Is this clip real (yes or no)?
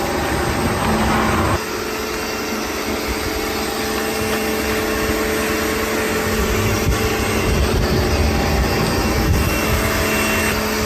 yes